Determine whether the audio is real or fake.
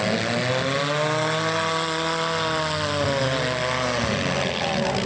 real